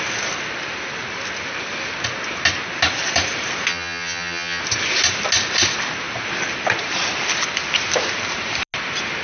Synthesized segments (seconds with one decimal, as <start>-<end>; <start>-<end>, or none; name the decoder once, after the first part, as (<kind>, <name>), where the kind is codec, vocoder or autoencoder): 3.7-4.6 (vocoder, HiFi-GAN)

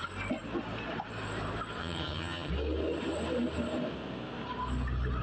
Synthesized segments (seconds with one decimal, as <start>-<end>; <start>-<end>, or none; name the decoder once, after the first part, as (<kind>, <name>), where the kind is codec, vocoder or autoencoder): 1.8-2.5 (vocoder, HiFi-GAN)

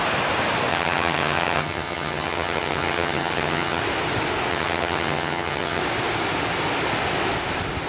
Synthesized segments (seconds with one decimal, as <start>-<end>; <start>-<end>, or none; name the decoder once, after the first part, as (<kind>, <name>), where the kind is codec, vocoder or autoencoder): 0.7-3.8 (vocoder, HiFi-GAN); 4.5-5.8

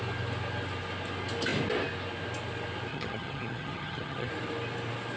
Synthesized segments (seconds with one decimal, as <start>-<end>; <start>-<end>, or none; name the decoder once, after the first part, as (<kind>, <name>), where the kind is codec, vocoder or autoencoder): 2.9-4.3 (vocoder, HiFi-GAN)

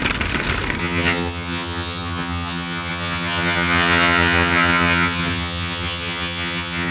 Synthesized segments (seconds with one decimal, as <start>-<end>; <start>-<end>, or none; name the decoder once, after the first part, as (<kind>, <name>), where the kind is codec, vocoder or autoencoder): 0.8-6.9 (vocoder, HiFi-GAN)